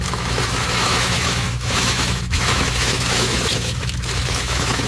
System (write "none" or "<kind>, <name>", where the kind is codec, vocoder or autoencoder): autoencoder, DAC-VAE